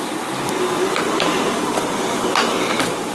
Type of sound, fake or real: real